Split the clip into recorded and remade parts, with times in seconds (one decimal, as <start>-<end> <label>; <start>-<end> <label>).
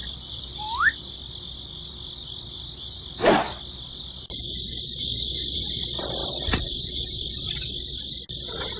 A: 0.0-4.8 remade; 4.8-8.8 recorded